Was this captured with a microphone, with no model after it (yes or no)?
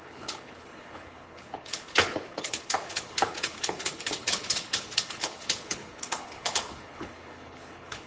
no